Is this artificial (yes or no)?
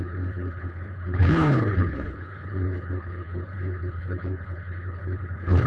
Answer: yes